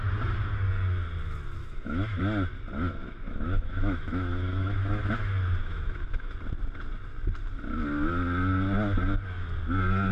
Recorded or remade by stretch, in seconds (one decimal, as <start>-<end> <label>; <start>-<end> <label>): 0.0-1.6 recorded; 1.6-2.2 remade; 2.2-3.0 recorded; 3.0-5.0 remade; 5.0-5.6 recorded; 5.6-6.3 remade; 6.3-10.1 recorded

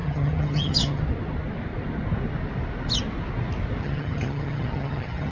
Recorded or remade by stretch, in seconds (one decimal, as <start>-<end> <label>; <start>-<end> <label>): 0.0-1.0 remade; 1.0-3.8 recorded; 3.8-5.3 remade

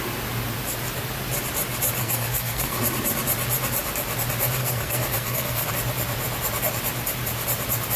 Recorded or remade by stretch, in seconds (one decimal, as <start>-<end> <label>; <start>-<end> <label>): 0.0-2.0 recorded; 2.0-2.8 remade; 2.8-4.6 recorded; 4.6-5.7 remade; 5.7-8.0 recorded

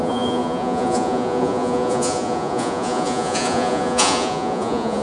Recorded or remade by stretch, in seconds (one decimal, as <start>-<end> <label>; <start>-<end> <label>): 0.0-5.0 remade

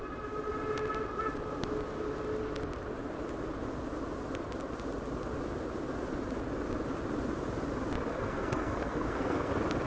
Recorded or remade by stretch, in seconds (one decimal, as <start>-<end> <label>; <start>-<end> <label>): 0.0-8.1 recorded; 8.1-9.5 remade; 9.5-9.9 recorded